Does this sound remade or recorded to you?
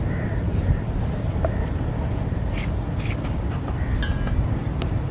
recorded